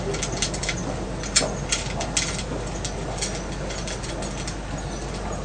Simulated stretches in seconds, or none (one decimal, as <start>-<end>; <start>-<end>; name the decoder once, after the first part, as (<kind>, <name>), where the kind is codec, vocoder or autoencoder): none